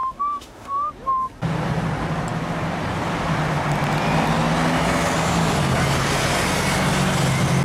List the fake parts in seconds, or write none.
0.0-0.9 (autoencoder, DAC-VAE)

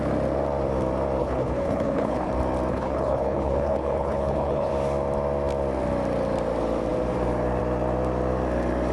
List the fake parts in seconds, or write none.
1.2-2.3 (codec, HILCodec); 2.7-4.7